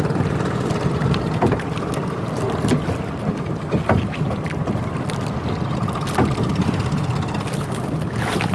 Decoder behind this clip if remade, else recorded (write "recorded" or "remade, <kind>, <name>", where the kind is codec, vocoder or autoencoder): recorded